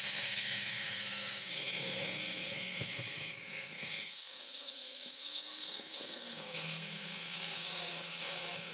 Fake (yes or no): yes